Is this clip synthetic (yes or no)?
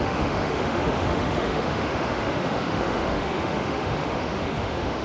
yes